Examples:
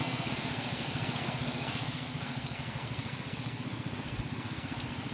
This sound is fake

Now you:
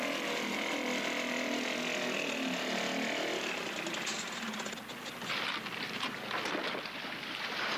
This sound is real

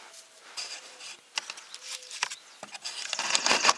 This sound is real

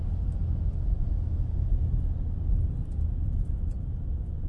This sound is real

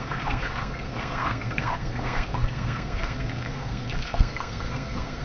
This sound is fake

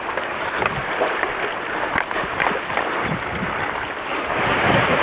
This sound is real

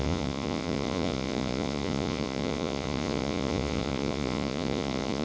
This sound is fake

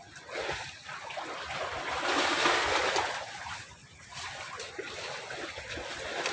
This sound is real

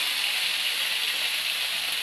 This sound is real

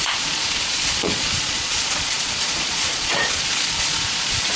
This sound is fake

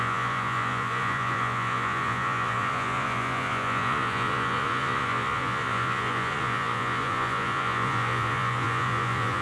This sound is fake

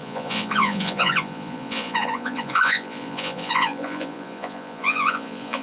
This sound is fake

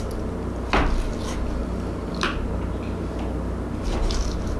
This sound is real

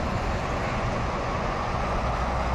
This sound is fake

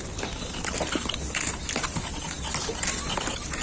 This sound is real